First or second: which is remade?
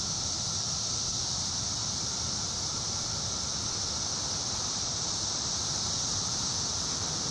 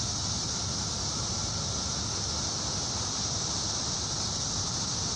first